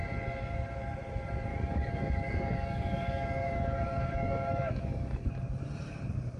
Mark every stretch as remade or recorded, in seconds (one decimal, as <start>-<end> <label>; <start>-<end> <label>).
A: 0.0-1.5 recorded; 1.5-5.3 remade; 5.3-6.4 recorded